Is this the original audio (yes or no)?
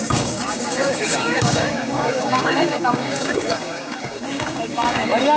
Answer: no